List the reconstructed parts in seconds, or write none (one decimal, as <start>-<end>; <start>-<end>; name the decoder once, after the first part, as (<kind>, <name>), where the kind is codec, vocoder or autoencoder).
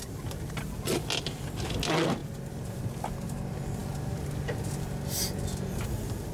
none